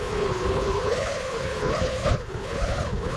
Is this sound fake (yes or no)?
yes